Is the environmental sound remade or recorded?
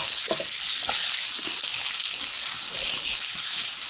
recorded